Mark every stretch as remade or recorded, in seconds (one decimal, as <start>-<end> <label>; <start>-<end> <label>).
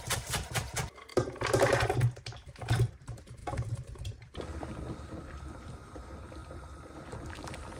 0.0-1.1 remade; 1.1-2.2 recorded; 2.2-7.8 remade